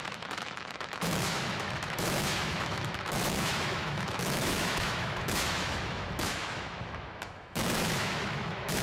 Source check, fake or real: fake